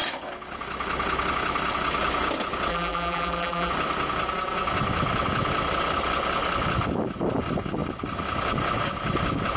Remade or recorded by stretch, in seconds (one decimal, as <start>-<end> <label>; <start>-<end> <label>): 0.0-2.7 recorded; 2.7-3.7 remade; 3.7-9.6 recorded